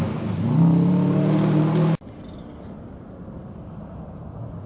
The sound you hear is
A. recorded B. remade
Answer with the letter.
A